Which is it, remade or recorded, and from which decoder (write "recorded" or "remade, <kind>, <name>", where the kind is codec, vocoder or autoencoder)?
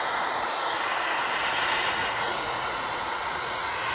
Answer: remade, vocoder, Vocos